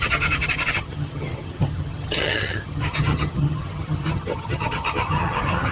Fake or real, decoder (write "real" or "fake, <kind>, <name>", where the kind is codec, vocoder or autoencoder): fake, vocoder, HiFi-GAN